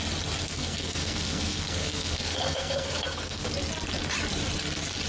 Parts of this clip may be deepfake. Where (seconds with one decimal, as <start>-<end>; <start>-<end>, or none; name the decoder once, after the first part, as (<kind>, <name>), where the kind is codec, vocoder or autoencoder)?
0.4-3.5 (codec, SNAC)